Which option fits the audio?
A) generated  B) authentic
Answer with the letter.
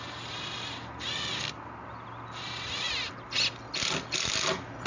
B